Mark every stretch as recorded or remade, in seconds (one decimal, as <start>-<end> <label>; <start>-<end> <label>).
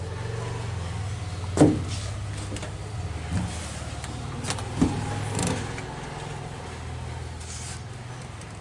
0.0-8.6 recorded